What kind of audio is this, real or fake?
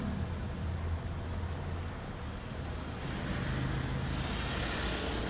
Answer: real